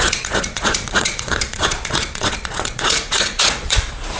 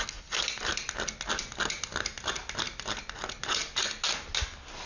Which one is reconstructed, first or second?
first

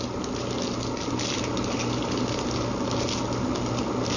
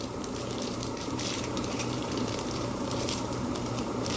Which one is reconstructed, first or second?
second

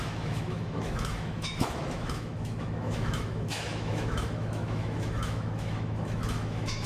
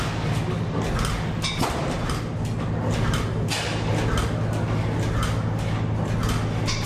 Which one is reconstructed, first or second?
first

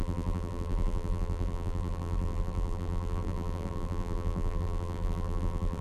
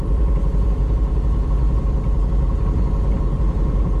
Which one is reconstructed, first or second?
first